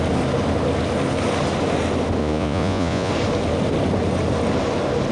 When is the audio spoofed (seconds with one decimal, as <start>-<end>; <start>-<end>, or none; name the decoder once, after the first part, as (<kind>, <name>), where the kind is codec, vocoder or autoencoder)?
2.2-3.1 (vocoder, Vocos)